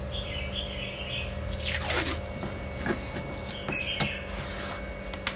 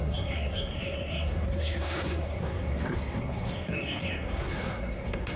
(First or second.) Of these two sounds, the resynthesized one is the second